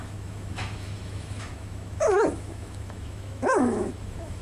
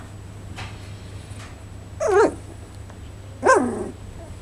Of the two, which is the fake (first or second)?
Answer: first